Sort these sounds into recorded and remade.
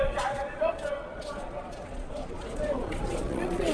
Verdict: remade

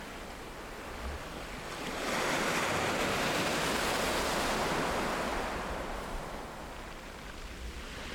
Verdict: recorded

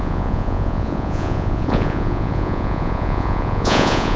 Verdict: remade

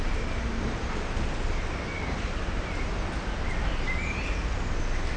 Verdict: recorded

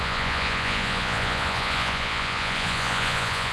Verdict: remade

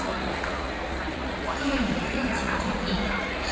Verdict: remade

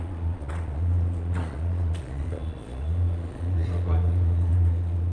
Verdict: remade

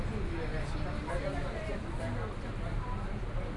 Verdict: recorded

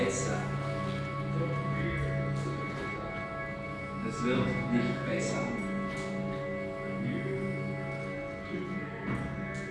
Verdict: recorded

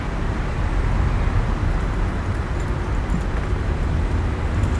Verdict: recorded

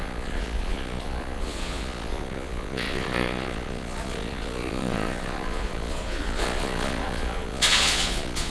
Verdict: remade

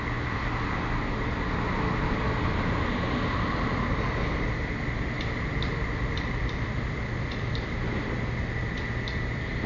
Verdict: recorded